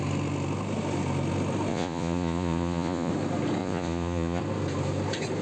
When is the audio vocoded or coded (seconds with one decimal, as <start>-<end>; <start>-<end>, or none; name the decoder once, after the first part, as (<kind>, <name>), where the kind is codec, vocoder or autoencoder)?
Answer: 1.7-3.1 (vocoder, Vocos); 3.6-4.4